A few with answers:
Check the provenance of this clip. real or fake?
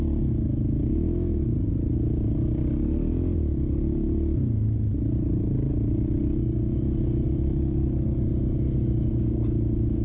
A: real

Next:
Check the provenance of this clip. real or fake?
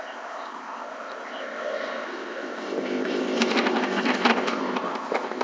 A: fake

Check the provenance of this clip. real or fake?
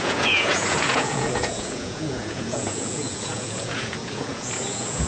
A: fake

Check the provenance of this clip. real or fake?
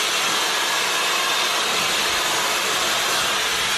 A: real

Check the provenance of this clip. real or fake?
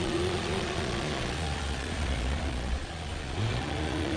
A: fake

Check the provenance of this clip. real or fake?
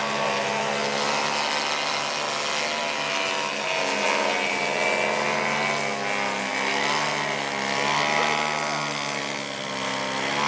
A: real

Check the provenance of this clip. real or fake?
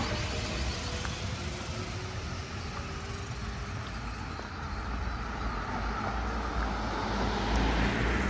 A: real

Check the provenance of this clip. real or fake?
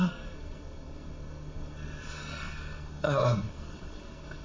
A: fake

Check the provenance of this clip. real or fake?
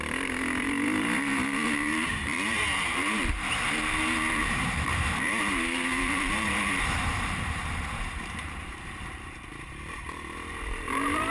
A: fake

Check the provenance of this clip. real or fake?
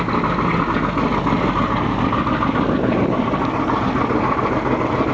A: real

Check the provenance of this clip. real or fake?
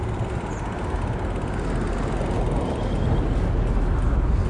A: real